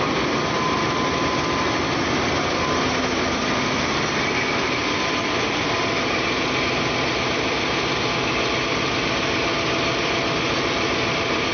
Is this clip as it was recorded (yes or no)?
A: yes